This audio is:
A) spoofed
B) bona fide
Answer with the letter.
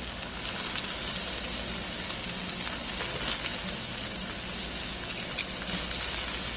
B